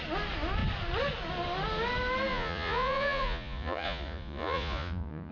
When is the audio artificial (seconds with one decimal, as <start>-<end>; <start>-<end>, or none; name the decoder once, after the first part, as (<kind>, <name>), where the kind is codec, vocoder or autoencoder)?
2.3-5.3 (vocoder, Vocos)